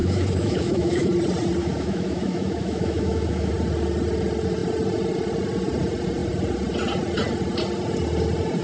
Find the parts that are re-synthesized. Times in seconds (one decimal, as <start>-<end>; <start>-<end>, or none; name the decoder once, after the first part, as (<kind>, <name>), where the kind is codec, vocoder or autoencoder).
0.0-1.1 (autoencoder, DAC-VAE); 1.6-3.5